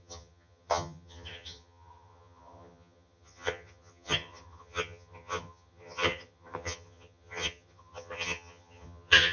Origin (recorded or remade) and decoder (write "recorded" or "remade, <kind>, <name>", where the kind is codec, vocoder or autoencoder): remade, vocoder, HiFi-GAN